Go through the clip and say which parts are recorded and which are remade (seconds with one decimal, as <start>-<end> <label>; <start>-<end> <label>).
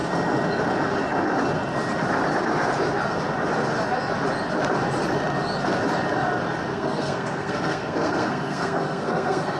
0.0-6.7 recorded; 6.7-9.6 remade